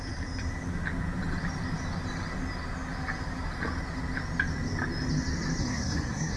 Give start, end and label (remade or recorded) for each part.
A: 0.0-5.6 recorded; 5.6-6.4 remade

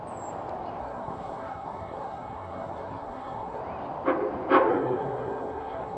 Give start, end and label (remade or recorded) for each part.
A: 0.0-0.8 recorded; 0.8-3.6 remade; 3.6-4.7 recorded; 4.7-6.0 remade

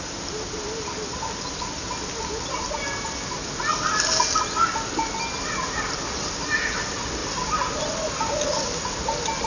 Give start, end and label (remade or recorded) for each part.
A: 0.0-9.5 recorded